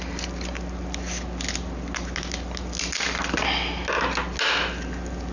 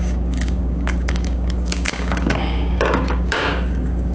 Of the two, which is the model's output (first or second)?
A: second